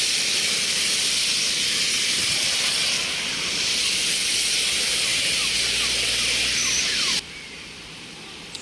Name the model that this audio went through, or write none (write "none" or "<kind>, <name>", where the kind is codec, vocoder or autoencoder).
none